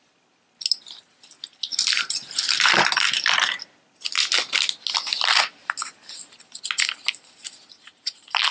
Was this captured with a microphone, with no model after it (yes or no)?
yes